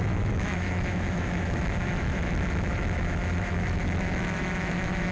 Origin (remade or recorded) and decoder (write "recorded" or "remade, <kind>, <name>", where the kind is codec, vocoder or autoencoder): remade, autoencoder, DAC-VAE